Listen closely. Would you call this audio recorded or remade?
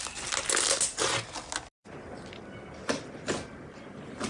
recorded